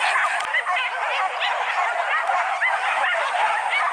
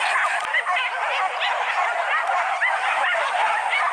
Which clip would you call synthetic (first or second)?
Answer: second